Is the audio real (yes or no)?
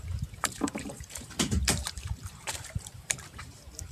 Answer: no